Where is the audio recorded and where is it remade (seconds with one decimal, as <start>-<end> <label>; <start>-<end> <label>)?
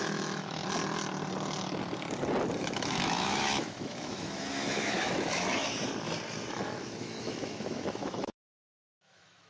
0.0-0.6 remade; 0.6-2.6 recorded; 2.6-5.6 remade; 5.6-6.5 recorded; 6.5-9.5 remade